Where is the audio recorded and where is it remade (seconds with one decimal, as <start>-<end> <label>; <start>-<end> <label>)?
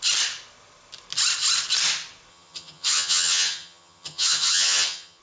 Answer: 0.0-2.3 recorded; 2.3-5.2 remade